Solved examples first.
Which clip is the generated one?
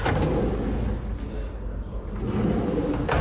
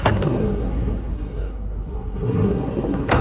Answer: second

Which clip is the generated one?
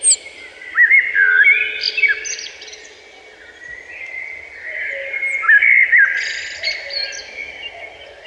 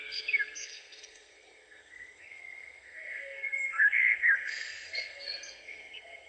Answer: second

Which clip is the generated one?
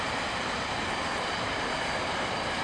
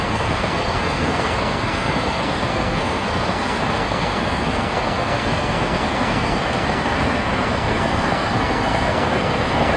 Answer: second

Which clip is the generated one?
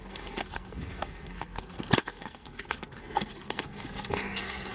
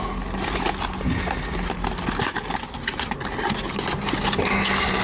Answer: first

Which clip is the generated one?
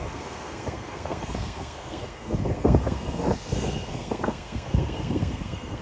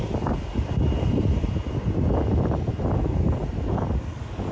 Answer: first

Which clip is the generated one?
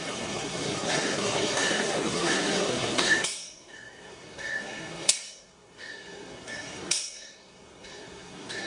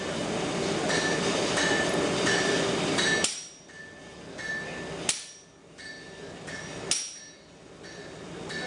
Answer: first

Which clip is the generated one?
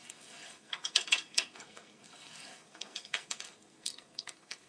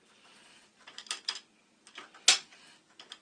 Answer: first